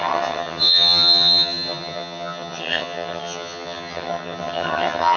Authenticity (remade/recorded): remade